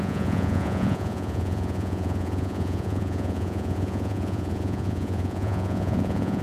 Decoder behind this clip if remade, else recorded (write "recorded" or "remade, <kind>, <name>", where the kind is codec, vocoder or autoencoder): remade, vocoder, Vocos